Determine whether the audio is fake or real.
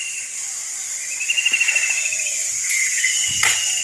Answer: fake